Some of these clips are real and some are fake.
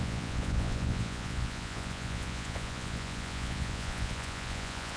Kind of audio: fake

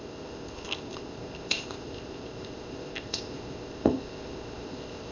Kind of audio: fake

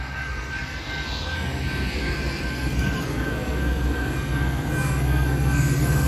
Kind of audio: fake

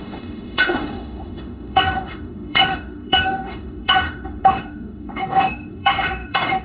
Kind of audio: fake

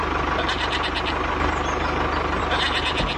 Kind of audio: real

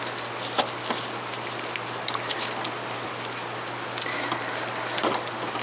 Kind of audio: real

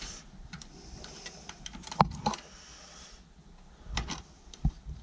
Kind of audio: fake